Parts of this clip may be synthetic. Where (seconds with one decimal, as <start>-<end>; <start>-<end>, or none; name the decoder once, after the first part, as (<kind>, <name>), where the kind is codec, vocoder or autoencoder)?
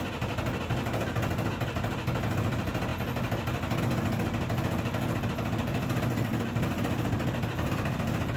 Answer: 6.3-8.4 (vocoder, BigVGAN v2)